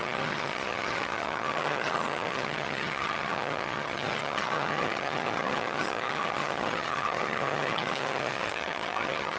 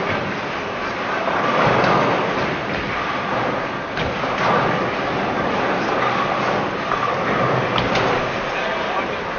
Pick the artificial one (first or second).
first